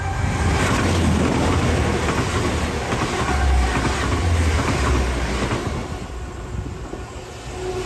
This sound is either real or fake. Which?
real